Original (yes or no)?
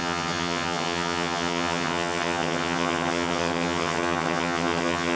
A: no